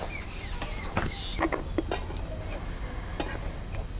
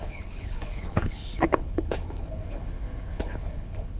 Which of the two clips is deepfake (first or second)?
second